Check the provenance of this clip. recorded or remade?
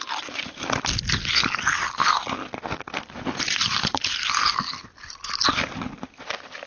recorded